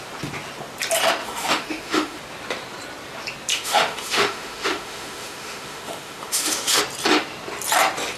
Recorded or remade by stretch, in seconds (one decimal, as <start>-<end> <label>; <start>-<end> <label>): 0.0-1.2 recorded; 1.2-2.2 remade; 2.2-3.5 recorded; 3.5-6.8 remade; 6.8-8.2 recorded